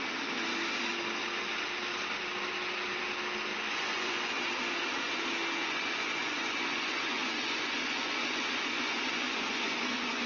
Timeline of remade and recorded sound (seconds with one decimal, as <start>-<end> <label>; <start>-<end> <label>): 0.0-3.5 recorded; 3.5-4.5 remade; 4.5-5.6 recorded; 5.6-10.3 remade